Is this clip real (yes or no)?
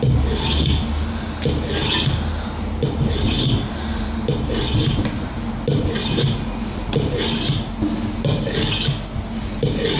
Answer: yes